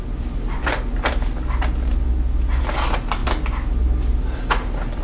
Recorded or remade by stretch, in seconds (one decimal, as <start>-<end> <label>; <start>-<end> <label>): 0.0-5.0 recorded